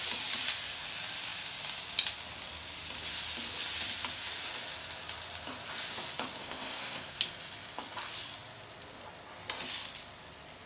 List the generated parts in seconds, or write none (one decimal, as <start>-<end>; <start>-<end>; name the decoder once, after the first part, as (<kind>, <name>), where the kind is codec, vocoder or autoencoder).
6.4-7.2 (codec, SNAC)